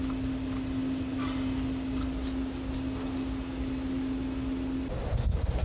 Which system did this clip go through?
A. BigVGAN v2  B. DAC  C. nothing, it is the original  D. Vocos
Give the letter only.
C